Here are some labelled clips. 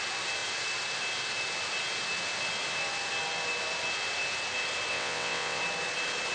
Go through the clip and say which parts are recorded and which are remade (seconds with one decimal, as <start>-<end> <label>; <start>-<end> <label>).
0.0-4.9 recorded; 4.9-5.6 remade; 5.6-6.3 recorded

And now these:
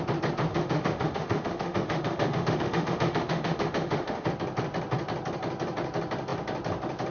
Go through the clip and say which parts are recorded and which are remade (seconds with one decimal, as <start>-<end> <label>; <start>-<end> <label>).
0.0-0.5 recorded; 0.5-4.3 remade; 4.3-7.1 recorded

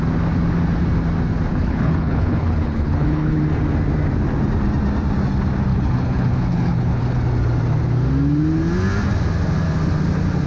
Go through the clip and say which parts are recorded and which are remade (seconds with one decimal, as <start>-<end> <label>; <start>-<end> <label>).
0.0-1.5 recorded; 1.5-3.4 remade; 3.4-5.7 recorded; 5.7-7.0 remade; 7.0-10.5 recorded